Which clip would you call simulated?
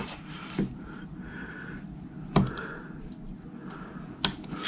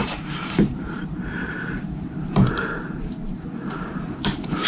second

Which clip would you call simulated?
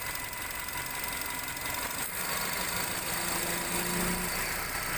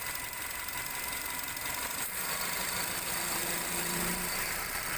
second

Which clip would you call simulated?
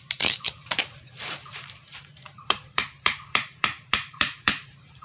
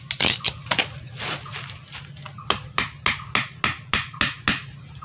first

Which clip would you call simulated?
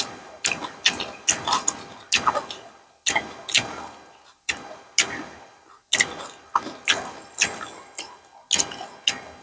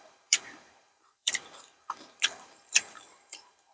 second